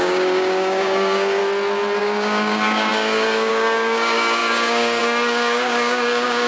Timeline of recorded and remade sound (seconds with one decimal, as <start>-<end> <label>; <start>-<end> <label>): 0.0-1.4 remade; 1.4-2.0 recorded; 2.0-6.5 remade